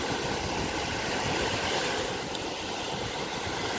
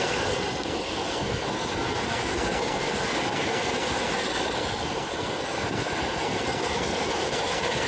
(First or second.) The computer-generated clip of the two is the second